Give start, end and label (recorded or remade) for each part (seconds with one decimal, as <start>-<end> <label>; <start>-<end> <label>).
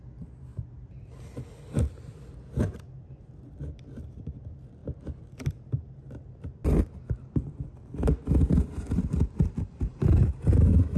0.0-11.0 recorded